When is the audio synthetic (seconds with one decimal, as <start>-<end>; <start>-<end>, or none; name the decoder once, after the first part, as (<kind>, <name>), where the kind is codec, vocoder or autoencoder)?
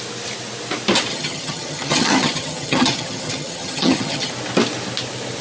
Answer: 1.1-4.3 (vocoder, HiFi-GAN)